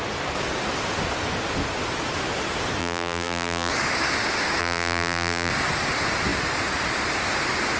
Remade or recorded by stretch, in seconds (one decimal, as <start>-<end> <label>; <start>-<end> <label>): 0.0-2.8 recorded; 2.8-3.7 remade; 3.7-4.6 recorded; 4.6-5.5 remade; 5.5-7.8 recorded